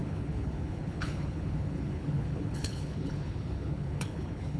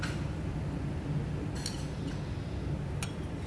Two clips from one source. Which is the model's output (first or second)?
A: first